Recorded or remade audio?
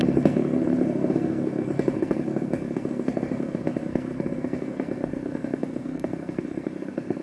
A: remade